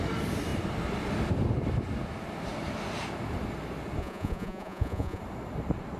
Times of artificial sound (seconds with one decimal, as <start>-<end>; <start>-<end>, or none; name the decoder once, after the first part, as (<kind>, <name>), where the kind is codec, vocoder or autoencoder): 4.0-5.2 (vocoder, Vocos)